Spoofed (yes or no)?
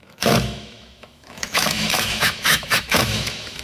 yes